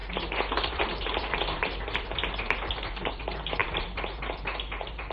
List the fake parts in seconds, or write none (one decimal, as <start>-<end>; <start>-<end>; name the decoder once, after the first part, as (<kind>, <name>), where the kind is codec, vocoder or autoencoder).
0.0-5.1 (vocoder, BigVGAN v2)